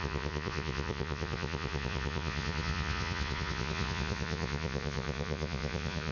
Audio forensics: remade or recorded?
remade